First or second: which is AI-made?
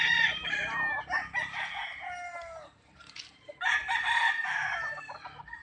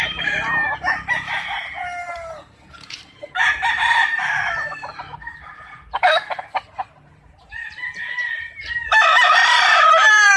second